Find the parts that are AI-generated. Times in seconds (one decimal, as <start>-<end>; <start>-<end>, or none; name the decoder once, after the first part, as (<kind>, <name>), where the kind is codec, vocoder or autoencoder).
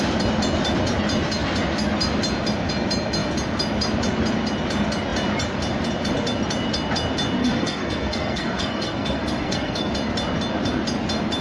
7.4-9.9 (codec, SNAC)